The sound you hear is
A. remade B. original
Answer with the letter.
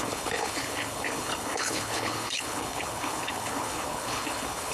A